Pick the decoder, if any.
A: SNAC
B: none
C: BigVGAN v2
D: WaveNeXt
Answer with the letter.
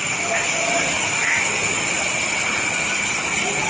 B